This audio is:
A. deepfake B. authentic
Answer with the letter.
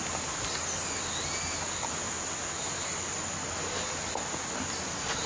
B